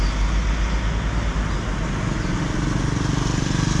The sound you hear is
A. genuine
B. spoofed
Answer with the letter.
A